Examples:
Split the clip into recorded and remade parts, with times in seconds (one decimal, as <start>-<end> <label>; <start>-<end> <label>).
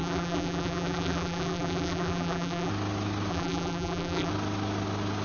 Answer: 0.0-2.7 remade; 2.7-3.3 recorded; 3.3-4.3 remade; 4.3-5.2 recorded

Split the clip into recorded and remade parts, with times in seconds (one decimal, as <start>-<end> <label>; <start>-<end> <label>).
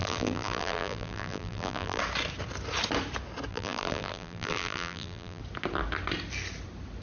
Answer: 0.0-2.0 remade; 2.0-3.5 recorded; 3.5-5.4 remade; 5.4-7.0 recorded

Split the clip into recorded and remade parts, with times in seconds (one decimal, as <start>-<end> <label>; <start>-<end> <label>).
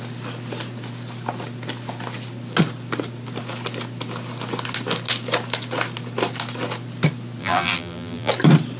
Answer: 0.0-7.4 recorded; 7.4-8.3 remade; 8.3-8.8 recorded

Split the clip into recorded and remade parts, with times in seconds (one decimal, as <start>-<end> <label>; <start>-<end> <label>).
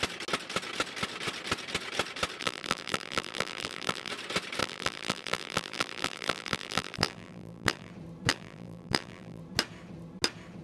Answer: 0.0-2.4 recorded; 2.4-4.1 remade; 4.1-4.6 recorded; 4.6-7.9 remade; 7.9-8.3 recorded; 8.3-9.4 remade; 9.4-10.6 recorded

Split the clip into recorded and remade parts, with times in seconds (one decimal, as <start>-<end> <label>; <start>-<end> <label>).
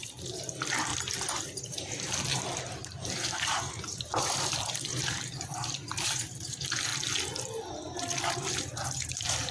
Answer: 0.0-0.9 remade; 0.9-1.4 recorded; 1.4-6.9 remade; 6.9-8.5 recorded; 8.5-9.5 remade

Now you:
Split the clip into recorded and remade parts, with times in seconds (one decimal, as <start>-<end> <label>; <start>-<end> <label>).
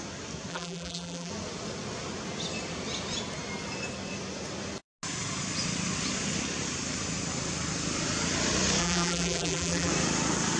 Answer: 0.0-0.5 recorded; 0.5-1.3 remade; 1.3-8.8 recorded; 8.8-9.9 remade; 9.9-10.6 recorded